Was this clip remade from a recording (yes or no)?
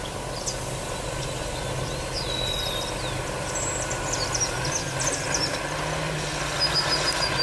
no